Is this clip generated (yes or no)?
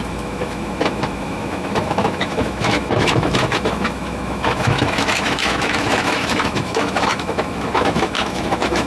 yes